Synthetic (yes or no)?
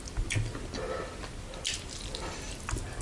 no